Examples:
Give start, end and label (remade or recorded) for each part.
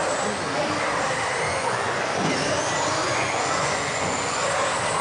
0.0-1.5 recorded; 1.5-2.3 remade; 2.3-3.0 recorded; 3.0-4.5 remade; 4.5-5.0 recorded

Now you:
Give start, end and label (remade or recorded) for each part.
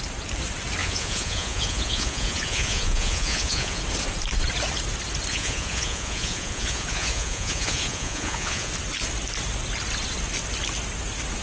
0.0-0.8 recorded; 0.8-3.8 remade; 3.8-5.3 recorded; 5.3-8.7 remade; 8.7-11.4 recorded